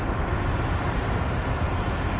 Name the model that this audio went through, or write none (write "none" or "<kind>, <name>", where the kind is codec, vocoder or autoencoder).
none